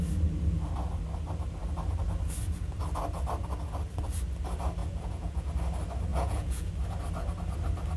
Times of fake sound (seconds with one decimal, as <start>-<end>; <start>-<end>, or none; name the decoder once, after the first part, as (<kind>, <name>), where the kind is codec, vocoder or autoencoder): 4.8-5.5 (vocoder, Vocos); 6.1-6.7